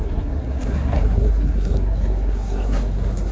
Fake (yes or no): yes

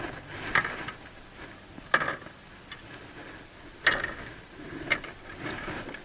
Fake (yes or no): no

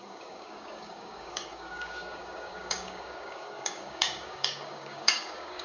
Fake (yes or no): yes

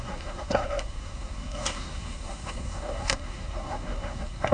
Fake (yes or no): yes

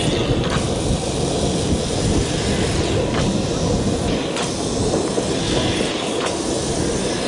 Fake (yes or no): no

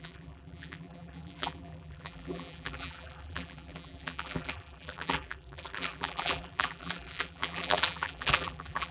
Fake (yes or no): yes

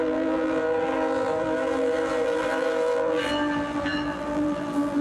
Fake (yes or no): yes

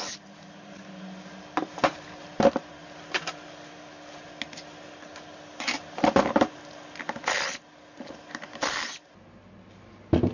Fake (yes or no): no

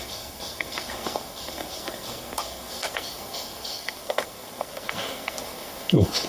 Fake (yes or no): yes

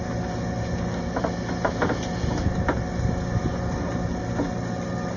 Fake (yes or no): no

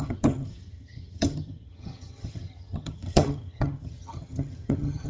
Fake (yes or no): yes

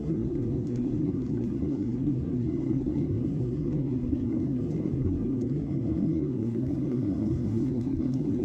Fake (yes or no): yes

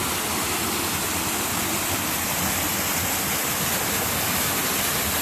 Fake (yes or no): no